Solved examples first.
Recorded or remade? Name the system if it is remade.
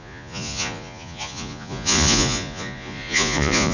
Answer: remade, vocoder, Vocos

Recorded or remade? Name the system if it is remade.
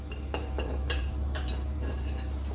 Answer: remade, vocoder, BigVGAN v2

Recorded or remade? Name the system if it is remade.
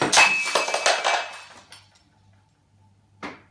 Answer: recorded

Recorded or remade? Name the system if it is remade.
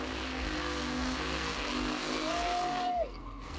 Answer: remade, codec, SNAC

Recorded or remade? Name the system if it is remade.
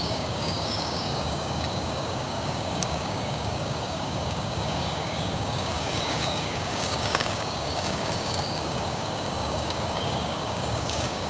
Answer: remade, codec, DAC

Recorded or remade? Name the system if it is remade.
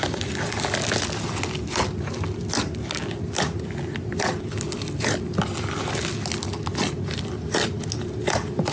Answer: recorded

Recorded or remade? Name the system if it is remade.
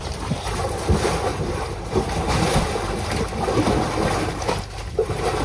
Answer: recorded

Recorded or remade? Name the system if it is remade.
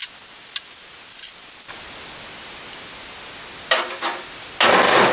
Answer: recorded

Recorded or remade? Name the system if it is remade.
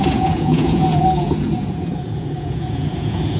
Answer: remade, vocoder, Vocos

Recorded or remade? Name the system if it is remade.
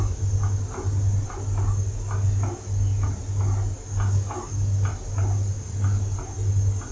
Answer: recorded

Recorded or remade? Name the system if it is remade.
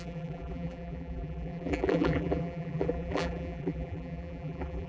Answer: remade, vocoder, BigVGAN v2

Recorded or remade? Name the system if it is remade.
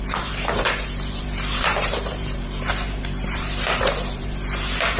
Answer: remade, vocoder, BigVGAN v2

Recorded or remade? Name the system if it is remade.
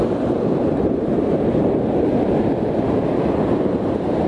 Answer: remade, vocoder, BigVGAN v2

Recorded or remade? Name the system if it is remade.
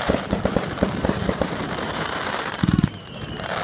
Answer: remade, vocoder, BigVGAN v2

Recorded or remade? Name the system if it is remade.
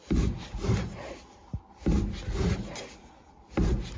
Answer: recorded